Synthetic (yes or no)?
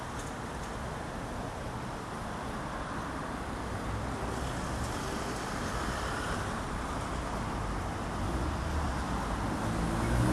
no